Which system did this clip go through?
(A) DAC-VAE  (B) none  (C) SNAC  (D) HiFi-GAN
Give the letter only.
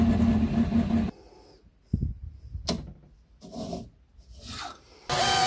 B